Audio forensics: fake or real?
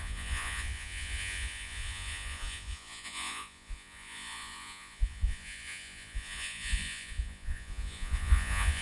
fake